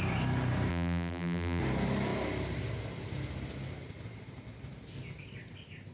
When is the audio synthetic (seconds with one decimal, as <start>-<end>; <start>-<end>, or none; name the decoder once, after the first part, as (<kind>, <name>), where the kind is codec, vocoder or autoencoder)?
0.7-1.6 (vocoder, BigVGAN v2)